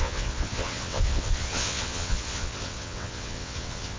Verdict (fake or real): fake